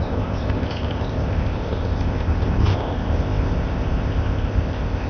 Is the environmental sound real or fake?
fake